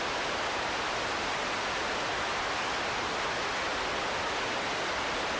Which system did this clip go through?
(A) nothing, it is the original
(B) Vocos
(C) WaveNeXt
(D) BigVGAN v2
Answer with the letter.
A